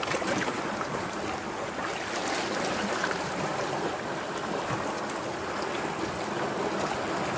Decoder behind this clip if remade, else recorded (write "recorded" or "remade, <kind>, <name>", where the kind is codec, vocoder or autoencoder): recorded